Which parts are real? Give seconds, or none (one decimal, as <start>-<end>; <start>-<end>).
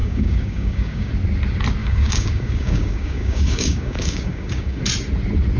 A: 1.1-1.8; 4.8-5.6